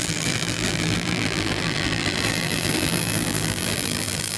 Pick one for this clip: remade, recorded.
remade